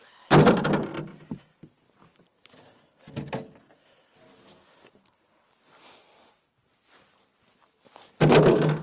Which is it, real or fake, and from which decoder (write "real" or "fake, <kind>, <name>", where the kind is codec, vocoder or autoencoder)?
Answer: real